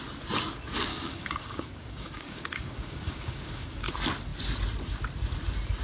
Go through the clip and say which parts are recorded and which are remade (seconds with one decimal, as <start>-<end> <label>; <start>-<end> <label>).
0.0-0.9 recorded; 0.9-3.9 remade; 3.9-5.8 recorded